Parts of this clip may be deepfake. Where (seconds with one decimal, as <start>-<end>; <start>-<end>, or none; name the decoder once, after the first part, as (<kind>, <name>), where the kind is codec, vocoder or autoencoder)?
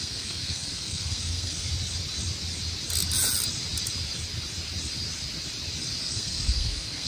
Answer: 0.0-1.7 (codec, SNAC); 6.0-7.1